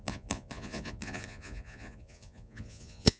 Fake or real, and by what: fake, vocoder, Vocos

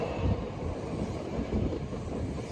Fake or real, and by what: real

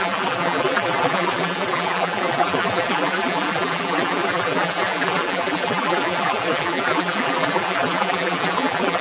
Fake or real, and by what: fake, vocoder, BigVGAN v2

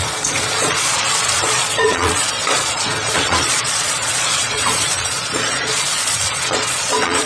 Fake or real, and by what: fake, vocoder, Vocos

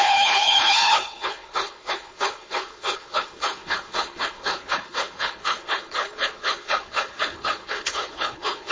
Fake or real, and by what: fake, codec, HILCodec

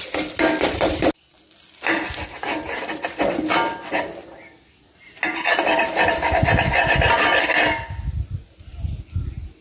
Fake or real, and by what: real